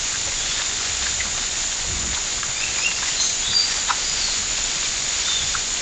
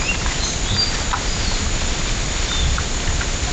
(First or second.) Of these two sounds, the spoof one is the first